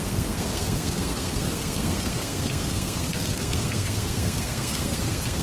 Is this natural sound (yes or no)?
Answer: no